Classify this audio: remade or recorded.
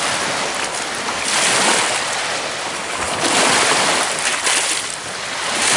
remade